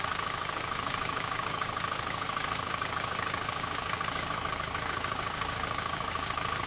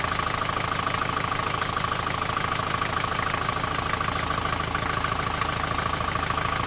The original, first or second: second